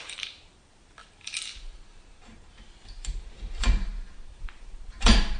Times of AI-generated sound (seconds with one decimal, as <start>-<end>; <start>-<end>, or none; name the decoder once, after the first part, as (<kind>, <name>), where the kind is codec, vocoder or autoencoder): 0.0-5.4 (vocoder, BigVGAN v2)